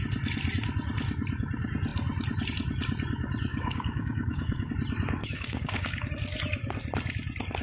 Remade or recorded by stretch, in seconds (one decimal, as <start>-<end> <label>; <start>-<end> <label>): 0.0-3.5 recorded; 3.5-4.7 remade; 4.7-5.2 recorded; 5.2-6.1 remade; 6.1-7.6 recorded